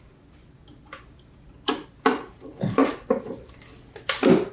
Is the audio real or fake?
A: real